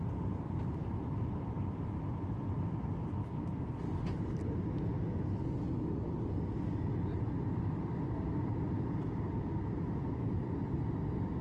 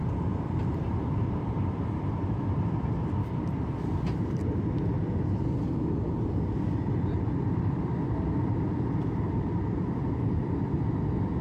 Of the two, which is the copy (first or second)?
second